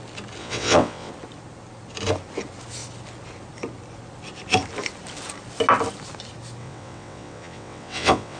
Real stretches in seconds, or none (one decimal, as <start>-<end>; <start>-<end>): 0.0-0.4; 1.1-6.6